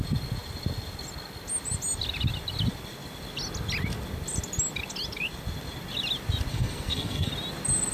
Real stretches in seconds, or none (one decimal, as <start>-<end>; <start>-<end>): 0.0-6.5; 7.3-7.9